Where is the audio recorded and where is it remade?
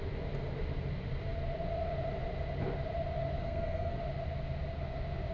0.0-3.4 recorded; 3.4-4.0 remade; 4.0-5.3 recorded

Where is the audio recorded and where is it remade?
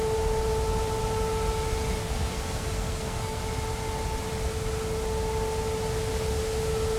0.0-2.0 recorded; 2.0-3.4 remade; 3.4-7.0 recorded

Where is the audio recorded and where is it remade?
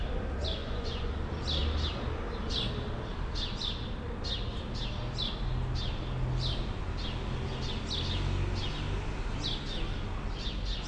0.0-0.6 recorded; 0.6-1.1 remade; 1.1-10.9 recorded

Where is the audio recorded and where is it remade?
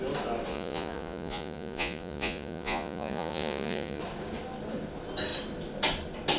0.0-0.5 recorded; 0.5-4.0 remade; 4.0-6.4 recorded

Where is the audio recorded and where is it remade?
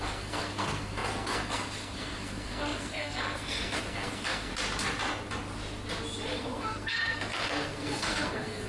0.0-4.5 remade; 4.5-6.3 recorded; 6.3-8.7 remade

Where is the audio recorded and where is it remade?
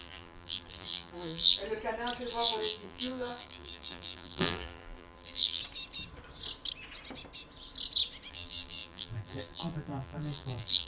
0.0-1.6 remade; 1.6-2.3 recorded; 2.3-5.6 remade; 5.6-8.3 recorded; 8.3-10.9 remade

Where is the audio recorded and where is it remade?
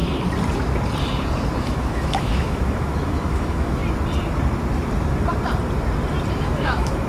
0.0-1.6 recorded; 1.6-3.8 remade; 3.8-6.3 recorded; 6.3-7.1 remade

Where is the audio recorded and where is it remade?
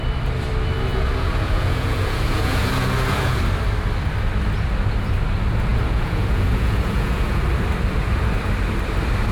0.0-0.9 recorded; 0.9-3.4 remade; 3.4-5.7 recorded; 5.7-7.4 remade; 7.4-9.3 recorded